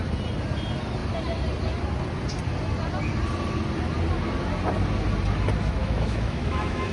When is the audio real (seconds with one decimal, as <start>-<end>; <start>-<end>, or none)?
0.0-5.8